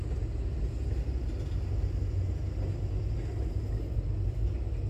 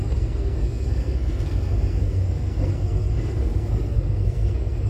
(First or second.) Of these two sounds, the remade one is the second